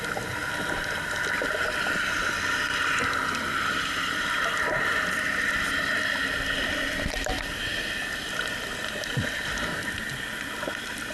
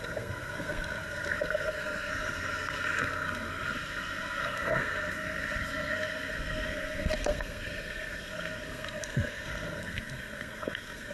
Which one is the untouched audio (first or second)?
first